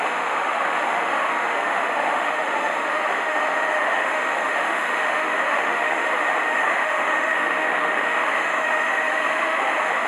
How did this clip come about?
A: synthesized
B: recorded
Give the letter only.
A